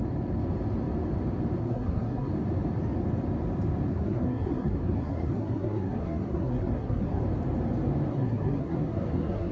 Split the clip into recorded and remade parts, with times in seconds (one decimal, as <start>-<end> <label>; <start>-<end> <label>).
0.0-1.6 recorded; 1.6-2.3 remade; 2.3-3.9 recorded; 3.9-7.2 remade; 7.2-8.1 recorded; 8.1-9.5 remade